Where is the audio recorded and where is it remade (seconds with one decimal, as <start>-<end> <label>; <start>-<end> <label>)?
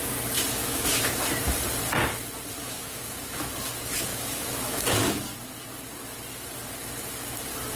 0.0-0.6 recorded; 0.6-1.2 remade; 1.2-2.6 recorded; 2.6-3.5 remade; 3.5-4.1 recorded; 4.1-5.2 remade; 5.2-7.8 recorded